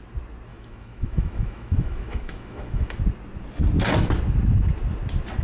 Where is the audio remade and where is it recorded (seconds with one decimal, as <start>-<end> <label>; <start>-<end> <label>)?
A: 0.0-0.5 recorded; 0.5-3.0 remade; 3.0-5.4 recorded